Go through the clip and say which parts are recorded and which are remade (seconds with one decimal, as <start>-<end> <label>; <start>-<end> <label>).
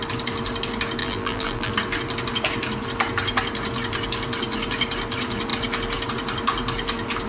0.0-1.0 recorded; 1.0-1.7 remade; 1.7-7.3 recorded